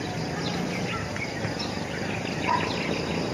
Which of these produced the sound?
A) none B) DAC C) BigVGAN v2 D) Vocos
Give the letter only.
A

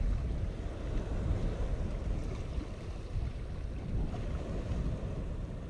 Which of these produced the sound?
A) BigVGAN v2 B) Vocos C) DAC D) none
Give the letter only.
D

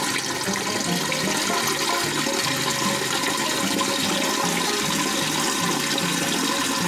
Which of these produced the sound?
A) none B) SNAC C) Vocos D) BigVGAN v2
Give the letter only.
A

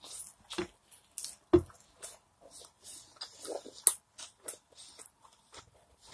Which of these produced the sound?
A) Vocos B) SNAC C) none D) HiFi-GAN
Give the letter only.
C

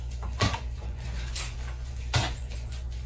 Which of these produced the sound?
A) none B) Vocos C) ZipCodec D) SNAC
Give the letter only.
B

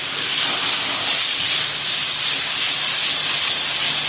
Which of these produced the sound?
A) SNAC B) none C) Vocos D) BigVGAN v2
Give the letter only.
B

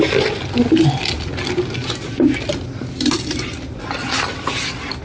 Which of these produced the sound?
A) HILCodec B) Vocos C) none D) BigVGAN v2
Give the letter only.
C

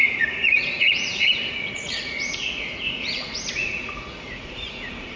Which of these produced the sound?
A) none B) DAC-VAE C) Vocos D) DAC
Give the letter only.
C